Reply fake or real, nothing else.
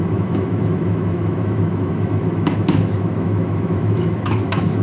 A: fake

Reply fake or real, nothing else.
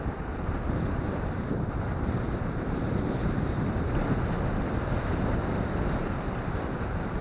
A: real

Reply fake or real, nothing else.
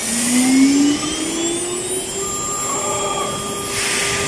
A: real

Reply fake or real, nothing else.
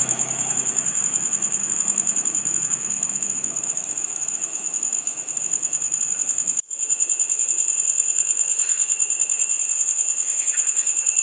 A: fake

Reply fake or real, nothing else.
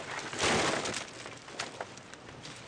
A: real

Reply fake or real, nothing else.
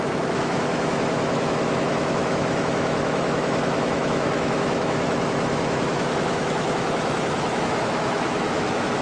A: fake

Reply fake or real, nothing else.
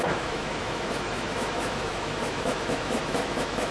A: fake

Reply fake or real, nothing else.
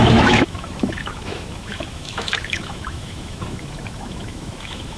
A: fake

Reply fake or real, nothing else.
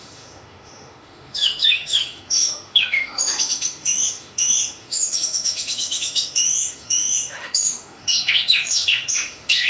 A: fake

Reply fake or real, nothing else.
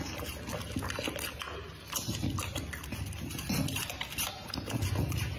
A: real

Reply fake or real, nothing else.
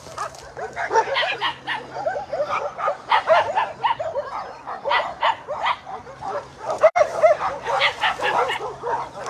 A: real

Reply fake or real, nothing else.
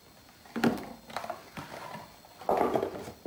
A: real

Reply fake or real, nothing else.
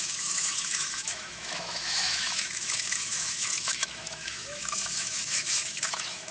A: fake